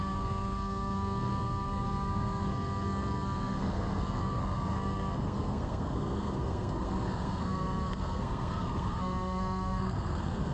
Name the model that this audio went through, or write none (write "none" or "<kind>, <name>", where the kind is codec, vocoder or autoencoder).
codec, SNAC